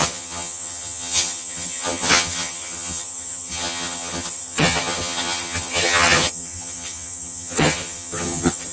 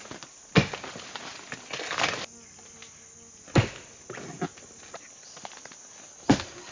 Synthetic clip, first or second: first